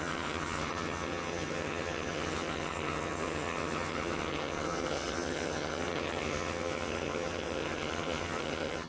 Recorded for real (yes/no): no